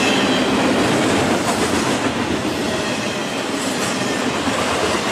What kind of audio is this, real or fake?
real